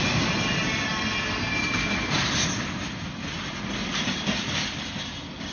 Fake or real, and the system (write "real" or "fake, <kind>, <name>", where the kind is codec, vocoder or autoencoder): real